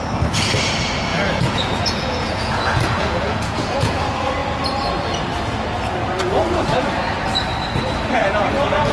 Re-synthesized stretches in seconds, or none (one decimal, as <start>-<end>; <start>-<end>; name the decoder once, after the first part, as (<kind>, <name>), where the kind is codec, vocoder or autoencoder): 1.1-4.0 (vocoder, Vocos)